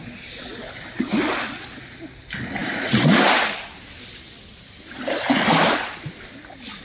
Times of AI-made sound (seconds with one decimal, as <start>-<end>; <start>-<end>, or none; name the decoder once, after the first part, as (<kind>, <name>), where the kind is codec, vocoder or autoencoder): none